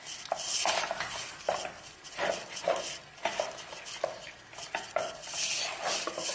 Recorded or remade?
recorded